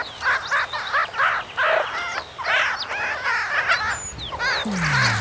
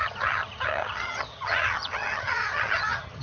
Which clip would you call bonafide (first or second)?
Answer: first